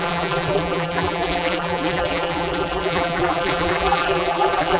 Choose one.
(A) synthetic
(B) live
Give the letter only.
A